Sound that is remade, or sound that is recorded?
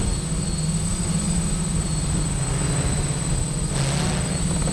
recorded